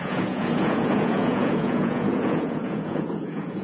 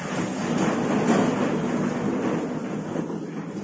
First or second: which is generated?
first